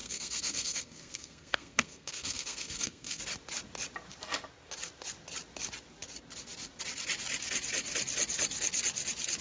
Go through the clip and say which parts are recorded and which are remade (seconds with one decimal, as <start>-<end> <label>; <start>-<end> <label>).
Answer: 0.0-3.2 remade; 3.2-9.4 recorded